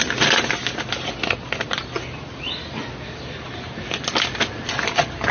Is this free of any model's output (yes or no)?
yes